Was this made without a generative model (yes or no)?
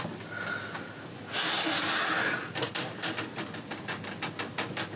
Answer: yes